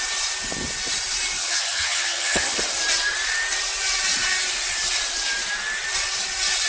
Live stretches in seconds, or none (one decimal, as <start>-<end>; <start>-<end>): 0.0-1.4; 2.6-6.7